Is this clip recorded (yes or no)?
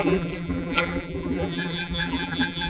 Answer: no